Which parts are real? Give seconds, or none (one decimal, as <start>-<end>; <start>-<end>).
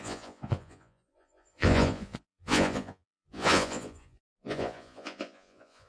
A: none